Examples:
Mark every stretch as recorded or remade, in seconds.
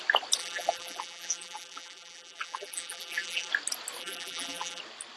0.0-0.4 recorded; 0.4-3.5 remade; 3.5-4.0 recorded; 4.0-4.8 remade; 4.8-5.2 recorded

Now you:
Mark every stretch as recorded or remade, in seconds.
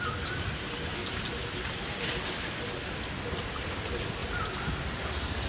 0.0-4.2 recorded; 4.2-5.1 remade; 5.1-5.5 recorded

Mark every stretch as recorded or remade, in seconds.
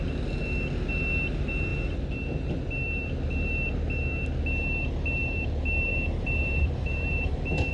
0.0-5.9 recorded; 5.9-7.7 remade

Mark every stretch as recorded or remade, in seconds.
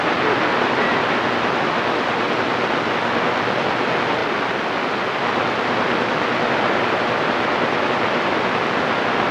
0.0-9.3 recorded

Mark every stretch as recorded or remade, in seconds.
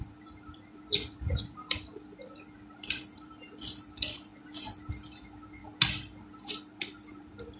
0.0-4.3 remade; 4.3-4.9 recorded; 4.9-5.7 remade; 5.7-7.1 recorded; 7.1-7.6 remade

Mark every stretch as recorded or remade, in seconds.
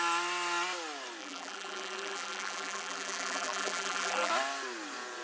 0.0-1.2 recorded; 1.2-4.3 remade; 4.3-5.2 recorded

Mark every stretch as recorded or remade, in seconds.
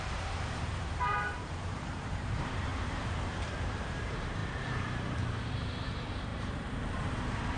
0.0-7.6 remade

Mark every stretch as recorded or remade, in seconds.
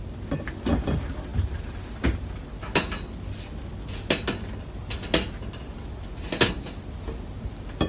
0.0-7.9 recorded